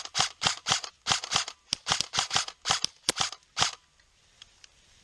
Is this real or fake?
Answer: real